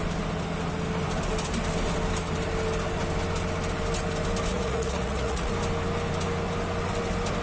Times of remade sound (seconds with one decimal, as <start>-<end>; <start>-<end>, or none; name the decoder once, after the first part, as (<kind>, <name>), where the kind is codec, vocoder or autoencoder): 4.5-5.5 (vocoder, Vocos)